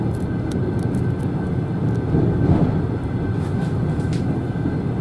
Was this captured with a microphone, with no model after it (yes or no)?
yes